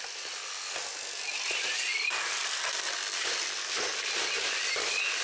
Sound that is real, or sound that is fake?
real